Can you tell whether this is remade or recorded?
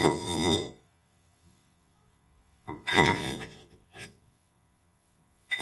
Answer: remade